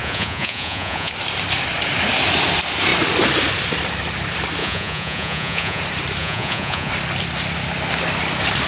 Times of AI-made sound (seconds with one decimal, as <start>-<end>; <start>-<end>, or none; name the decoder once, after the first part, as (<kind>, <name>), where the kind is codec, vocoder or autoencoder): 0.0-1.1 (vocoder, Vocos); 4.6-5.8; 6.2-6.9